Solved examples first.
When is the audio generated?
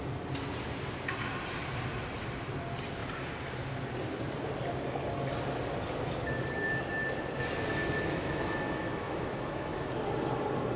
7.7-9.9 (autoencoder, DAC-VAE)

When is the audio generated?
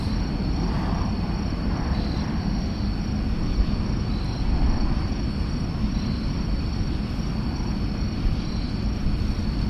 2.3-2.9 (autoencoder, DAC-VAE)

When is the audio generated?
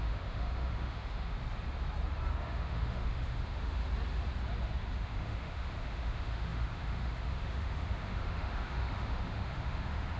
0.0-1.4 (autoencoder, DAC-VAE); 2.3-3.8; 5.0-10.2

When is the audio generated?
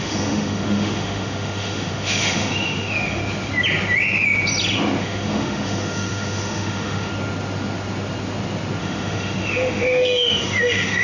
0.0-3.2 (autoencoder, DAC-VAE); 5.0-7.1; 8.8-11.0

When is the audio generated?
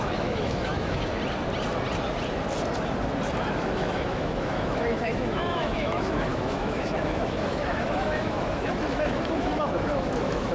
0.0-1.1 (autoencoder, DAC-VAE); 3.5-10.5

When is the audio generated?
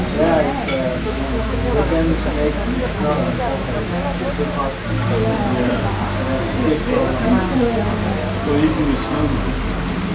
0.9-4.2 (autoencoder, DAC-VAE)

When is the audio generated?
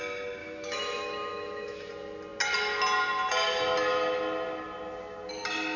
0.4-1.9 (autoencoder, DAC-VAE)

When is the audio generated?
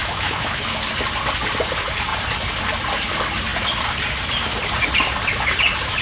0.0-0.6 (autoencoder, DAC-VAE)